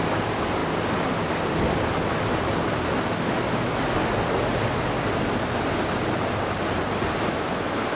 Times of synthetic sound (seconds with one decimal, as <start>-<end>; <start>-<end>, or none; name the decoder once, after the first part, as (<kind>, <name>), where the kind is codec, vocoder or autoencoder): none